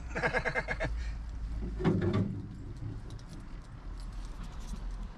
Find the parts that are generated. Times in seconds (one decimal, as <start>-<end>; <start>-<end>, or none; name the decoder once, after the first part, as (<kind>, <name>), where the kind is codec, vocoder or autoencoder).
none